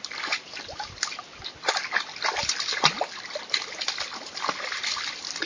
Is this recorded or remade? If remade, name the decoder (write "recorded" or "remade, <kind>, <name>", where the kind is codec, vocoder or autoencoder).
recorded